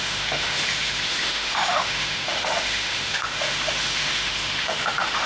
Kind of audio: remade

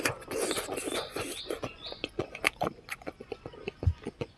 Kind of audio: remade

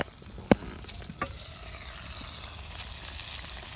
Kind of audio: recorded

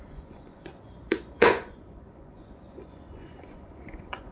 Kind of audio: remade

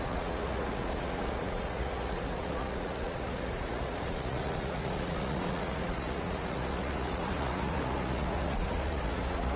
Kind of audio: remade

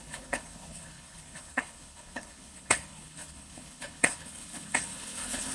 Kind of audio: remade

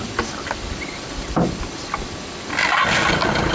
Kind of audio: recorded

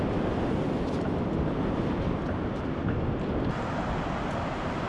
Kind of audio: recorded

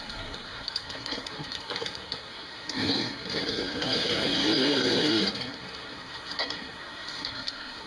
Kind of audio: remade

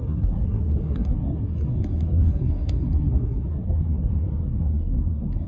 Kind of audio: remade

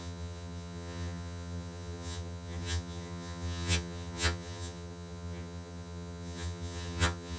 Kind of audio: remade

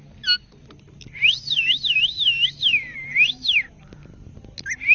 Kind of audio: recorded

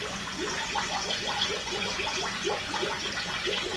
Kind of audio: remade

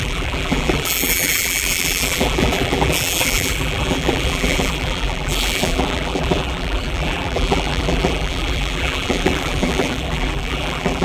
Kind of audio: remade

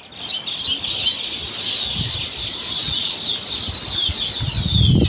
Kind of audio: recorded